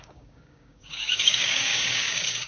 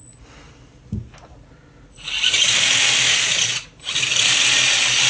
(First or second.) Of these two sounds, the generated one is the first